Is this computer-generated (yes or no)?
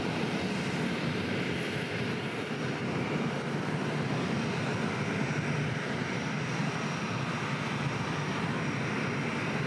no